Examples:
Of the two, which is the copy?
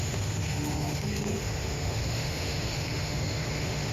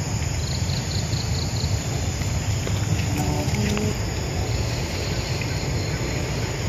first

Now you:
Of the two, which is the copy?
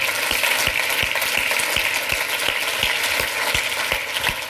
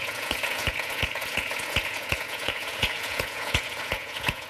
second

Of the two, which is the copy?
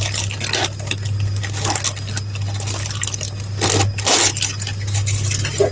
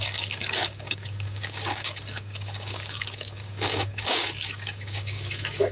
second